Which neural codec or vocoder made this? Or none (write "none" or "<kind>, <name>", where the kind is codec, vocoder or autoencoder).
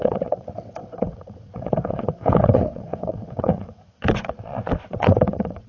vocoder, WaveNeXt